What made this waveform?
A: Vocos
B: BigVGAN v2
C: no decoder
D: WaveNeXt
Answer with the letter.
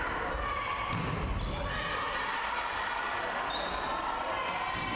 C